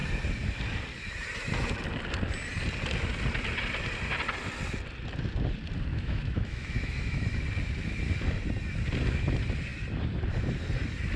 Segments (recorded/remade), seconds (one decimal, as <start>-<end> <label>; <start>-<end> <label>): 0.0-5.9 recorded; 5.9-7.4 remade; 7.4-11.2 recorded